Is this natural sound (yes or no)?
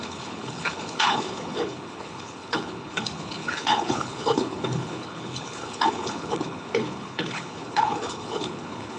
no